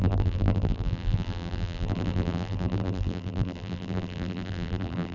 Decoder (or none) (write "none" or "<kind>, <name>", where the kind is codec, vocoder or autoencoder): vocoder, BigVGAN v2